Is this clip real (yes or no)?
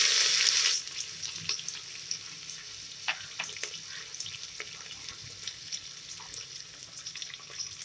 yes